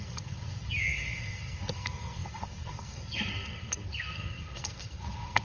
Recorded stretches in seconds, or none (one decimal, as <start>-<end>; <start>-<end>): none